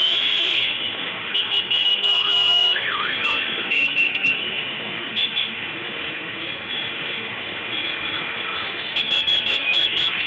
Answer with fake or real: fake